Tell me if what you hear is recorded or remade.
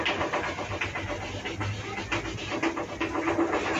recorded